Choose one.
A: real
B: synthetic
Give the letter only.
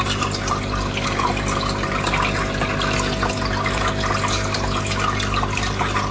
A